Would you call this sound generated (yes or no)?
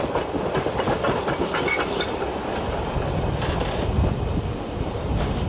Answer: no